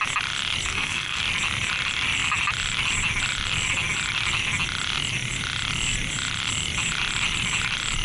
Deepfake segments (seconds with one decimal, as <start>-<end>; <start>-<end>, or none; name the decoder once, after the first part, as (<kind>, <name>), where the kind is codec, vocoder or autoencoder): 0.7-1.2 (codec, SNAC)